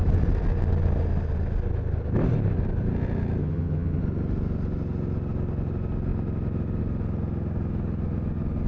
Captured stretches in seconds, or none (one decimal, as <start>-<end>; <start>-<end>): 0.0-3.4; 4.0-8.7